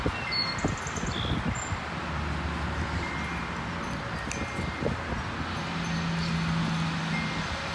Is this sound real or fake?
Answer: real